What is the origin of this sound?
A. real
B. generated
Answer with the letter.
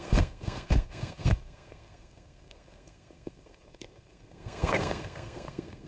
B